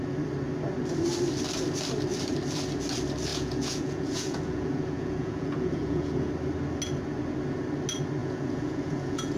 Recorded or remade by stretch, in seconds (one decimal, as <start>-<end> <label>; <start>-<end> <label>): 0.0-3.3 recorded; 3.3-6.3 remade; 6.3-8.2 recorded; 8.2-9.4 remade